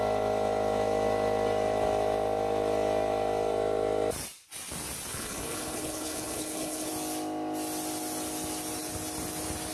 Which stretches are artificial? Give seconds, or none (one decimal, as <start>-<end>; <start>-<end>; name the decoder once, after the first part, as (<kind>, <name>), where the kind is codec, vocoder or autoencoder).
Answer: 5.1-6.9 (codec, HILCodec)